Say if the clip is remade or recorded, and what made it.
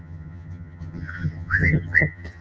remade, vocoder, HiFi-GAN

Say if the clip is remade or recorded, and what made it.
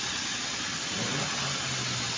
recorded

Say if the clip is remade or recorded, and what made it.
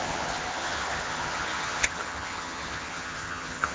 remade, vocoder, HiFi-GAN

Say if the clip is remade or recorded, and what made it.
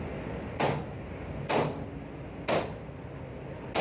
recorded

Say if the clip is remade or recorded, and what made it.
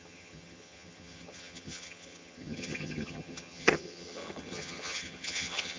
remade, vocoder, HiFi-GAN